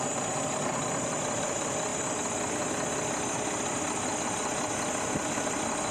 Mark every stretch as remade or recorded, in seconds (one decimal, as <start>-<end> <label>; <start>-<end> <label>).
0.0-5.9 recorded